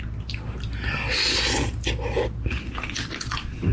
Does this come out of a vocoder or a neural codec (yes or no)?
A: no